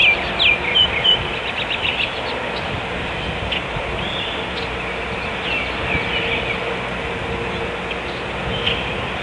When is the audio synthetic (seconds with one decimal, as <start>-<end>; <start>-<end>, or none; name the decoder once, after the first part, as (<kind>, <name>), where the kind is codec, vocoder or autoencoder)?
none

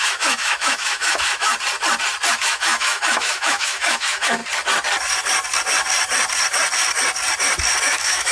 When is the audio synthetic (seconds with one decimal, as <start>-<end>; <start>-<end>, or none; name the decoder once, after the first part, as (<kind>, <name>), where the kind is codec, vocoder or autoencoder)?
0.0-1.5 (autoencoder, DAC-VAE); 2.3-4.4; 7.8-8.3